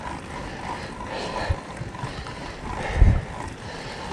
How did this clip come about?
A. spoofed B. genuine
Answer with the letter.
B